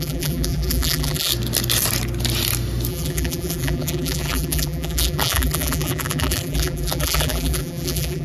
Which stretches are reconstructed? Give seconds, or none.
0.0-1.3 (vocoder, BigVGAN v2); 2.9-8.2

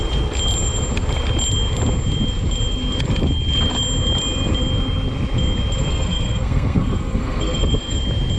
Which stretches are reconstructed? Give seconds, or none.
5.9-8.0 (codec, SNAC)

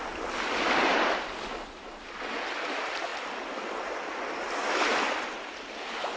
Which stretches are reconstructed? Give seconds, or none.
none

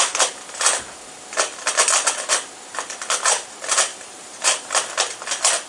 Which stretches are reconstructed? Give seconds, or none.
3.9-4.7 (vocoder, BigVGAN v2)

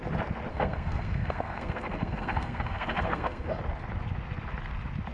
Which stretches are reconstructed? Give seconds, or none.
0.5-3.6 (codec, SNAC)

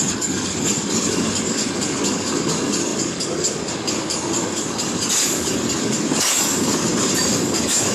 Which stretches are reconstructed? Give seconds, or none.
0.0-6.9 (codec, DAC); 7.4-7.9